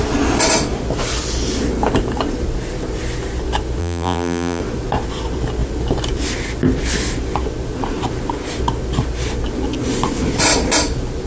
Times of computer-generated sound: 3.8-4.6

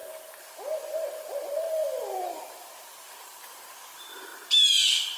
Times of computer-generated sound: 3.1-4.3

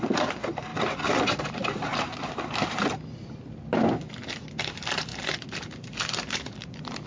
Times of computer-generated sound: 0.0-0.7; 1.4-1.9; 4.5-5.1; 5.6-7.1

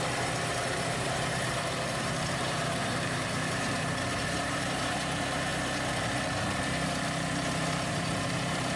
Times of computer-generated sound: 0.0-5.5; 7.9-8.8

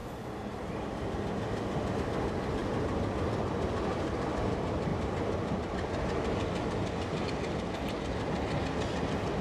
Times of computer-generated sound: none

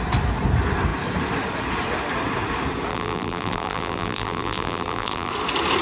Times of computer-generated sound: 2.9-5.3